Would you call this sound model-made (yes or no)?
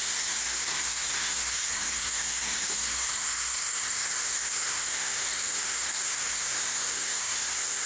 yes